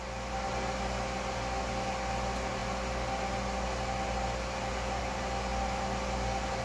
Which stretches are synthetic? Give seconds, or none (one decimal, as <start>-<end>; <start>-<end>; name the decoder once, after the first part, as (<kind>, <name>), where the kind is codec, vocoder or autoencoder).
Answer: none